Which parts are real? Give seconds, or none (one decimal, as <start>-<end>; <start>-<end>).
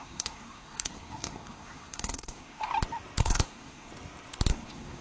2.7-3.2; 3.9-4.5